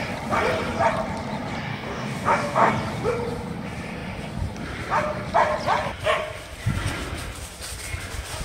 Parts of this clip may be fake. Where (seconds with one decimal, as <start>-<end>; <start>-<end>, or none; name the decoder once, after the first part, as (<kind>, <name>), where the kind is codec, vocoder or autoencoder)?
1.7-2.7 (codec, DAC)